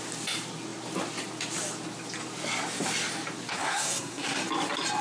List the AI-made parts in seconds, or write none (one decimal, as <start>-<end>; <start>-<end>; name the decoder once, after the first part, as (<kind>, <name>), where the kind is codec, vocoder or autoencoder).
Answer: 3.5-4.4 (codec, SNAC)